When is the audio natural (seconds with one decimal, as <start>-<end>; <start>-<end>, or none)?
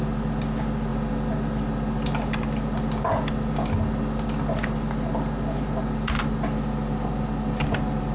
0.0-8.1